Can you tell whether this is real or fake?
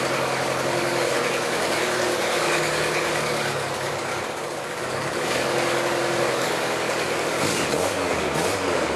fake